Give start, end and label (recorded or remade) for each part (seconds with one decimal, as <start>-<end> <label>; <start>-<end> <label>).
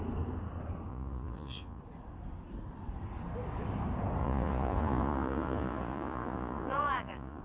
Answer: 0.0-0.9 recorded; 0.9-1.8 remade; 1.8-4.2 recorded; 4.2-7.4 remade